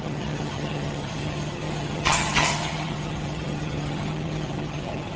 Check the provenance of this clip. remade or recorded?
remade